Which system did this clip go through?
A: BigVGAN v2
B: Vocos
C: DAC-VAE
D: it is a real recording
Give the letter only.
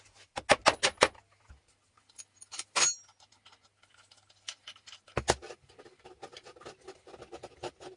D